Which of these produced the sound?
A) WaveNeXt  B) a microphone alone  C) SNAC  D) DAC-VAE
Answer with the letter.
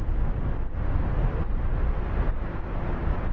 B